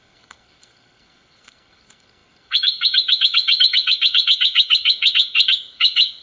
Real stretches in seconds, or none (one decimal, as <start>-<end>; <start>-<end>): none